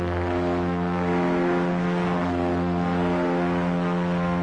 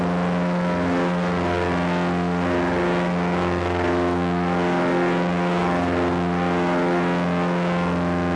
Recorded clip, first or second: second